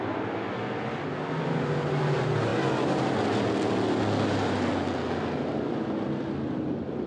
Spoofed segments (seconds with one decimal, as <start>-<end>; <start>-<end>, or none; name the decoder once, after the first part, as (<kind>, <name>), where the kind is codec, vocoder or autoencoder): none